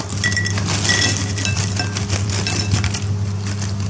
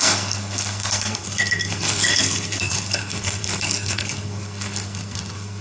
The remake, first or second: second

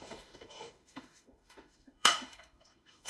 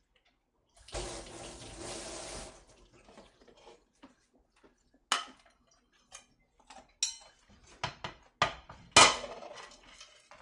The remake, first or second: first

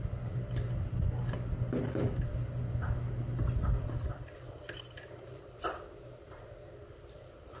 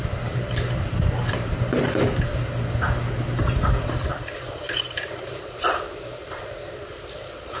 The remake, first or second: second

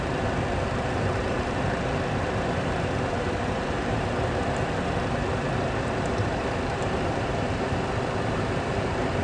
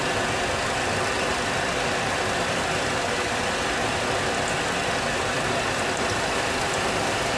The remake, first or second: first